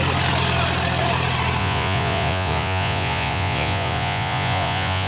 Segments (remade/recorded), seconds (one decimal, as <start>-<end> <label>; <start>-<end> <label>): 0.0-1.6 recorded; 1.6-5.1 remade